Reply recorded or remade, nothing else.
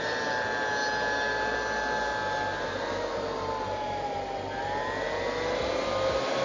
recorded